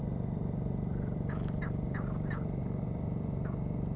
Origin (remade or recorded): remade